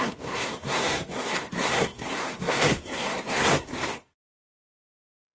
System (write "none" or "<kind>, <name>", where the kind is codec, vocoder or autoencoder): codec, SNAC